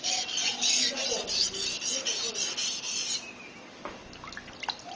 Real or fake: real